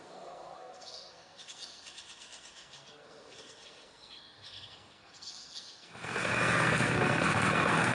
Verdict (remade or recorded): remade